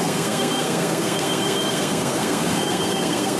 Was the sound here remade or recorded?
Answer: remade